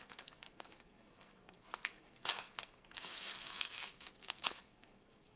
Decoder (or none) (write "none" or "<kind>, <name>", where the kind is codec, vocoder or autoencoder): codec, SNAC